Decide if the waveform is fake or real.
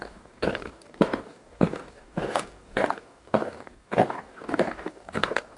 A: fake